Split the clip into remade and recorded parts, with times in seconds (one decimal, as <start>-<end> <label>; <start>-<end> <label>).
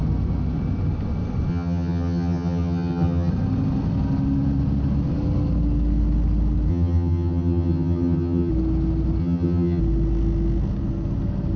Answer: 0.0-1.5 recorded; 1.5-3.3 remade; 3.3-6.7 recorded; 6.7-8.5 remade; 8.5-9.2 recorded; 9.2-9.8 remade; 9.8-11.6 recorded